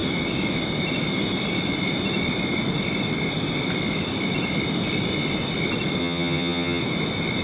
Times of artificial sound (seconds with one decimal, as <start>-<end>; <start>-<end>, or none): 6.0-6.8